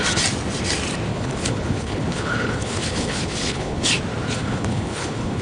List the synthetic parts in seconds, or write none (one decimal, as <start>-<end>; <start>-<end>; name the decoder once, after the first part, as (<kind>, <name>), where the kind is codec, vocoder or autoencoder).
1.1-3.9 (codec, HILCodec); 4.4-5.4